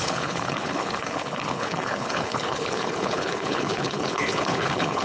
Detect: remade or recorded remade